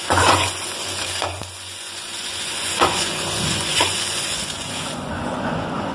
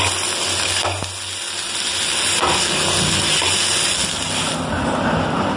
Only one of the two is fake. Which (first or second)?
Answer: first